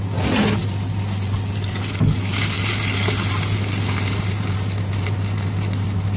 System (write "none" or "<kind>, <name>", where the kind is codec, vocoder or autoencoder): none